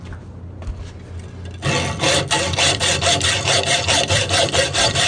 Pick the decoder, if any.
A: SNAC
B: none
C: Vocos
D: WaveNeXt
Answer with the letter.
B